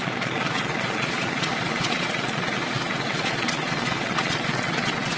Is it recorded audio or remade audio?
remade